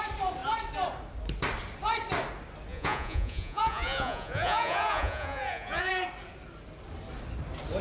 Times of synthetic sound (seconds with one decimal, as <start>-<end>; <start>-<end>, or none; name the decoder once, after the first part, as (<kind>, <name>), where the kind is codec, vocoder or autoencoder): 2.7-5.9 (vocoder, Vocos)